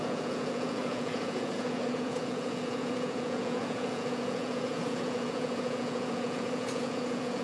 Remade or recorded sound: remade